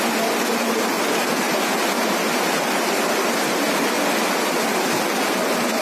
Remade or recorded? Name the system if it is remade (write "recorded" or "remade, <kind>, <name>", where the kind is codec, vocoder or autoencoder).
recorded